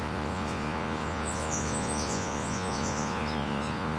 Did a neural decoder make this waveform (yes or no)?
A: yes